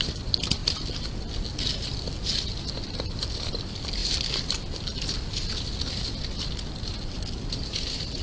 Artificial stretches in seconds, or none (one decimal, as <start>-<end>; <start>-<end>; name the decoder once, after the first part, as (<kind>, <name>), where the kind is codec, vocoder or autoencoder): none